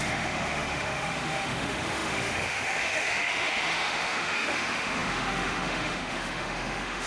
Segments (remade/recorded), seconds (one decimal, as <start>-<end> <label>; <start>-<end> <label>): 0.0-7.1 remade